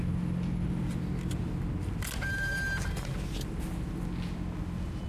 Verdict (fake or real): real